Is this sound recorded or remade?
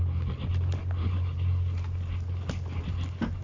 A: recorded